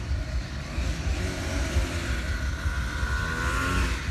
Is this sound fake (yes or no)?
no